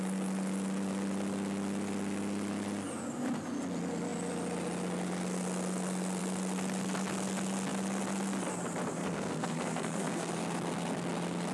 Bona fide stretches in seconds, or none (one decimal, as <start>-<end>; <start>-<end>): 0.0-9.0; 10.3-11.5